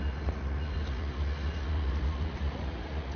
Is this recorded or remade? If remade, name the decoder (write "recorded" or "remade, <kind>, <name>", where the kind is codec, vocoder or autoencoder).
remade, vocoder, Vocos